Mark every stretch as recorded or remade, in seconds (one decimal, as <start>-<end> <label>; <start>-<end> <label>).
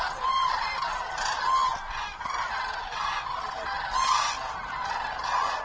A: 0.0-5.6 recorded